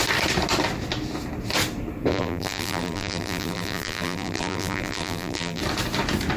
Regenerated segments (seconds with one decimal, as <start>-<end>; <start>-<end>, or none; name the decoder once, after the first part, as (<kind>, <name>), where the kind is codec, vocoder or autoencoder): 2.1-5.6 (vocoder, BigVGAN v2)